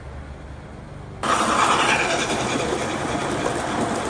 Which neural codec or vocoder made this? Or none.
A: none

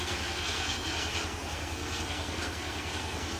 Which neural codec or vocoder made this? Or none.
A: codec, SNAC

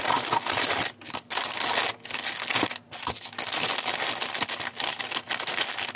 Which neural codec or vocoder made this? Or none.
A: none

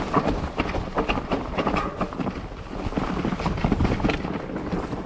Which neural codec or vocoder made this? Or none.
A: none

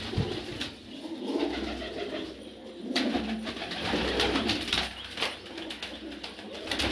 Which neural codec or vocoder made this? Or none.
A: none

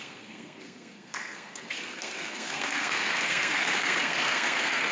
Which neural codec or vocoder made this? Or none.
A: codec, SNAC